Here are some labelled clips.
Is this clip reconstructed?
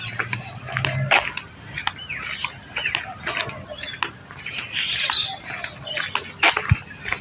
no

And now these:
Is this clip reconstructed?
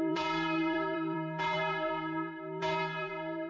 yes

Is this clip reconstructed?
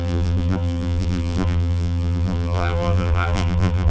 yes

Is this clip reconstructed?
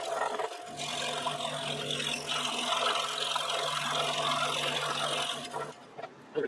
no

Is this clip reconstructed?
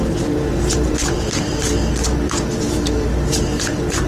yes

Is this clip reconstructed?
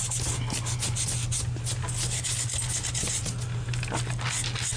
no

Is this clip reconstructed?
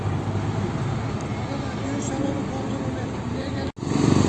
no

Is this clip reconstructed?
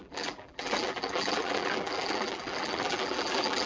yes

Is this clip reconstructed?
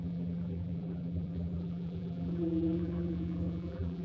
yes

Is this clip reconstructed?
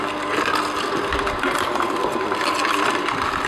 no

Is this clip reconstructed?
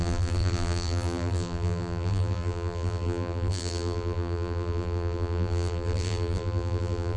yes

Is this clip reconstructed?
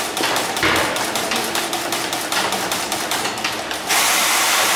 no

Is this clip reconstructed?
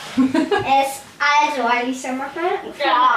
yes